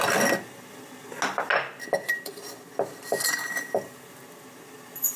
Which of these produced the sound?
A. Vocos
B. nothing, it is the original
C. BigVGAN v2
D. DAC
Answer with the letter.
B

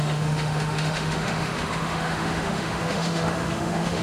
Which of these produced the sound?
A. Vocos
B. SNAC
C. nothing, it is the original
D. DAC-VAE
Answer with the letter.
D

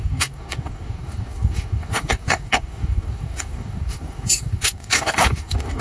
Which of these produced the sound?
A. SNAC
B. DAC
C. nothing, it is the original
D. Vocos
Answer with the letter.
B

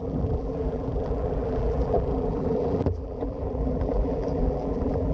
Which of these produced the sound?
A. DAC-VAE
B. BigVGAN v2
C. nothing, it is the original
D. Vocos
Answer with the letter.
B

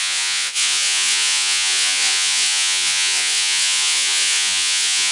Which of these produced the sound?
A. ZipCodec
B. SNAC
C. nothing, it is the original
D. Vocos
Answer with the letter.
D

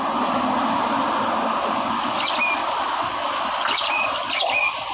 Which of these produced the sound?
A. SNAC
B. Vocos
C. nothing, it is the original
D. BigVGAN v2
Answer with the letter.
C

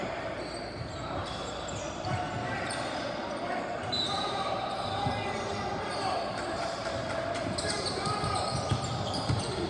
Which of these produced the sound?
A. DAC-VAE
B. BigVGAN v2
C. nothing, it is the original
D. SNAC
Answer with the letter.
B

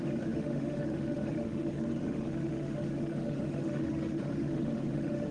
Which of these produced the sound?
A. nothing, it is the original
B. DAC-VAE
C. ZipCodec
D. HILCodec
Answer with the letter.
B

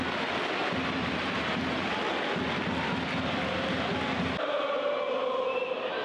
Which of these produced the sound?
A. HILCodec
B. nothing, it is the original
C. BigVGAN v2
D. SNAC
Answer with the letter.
B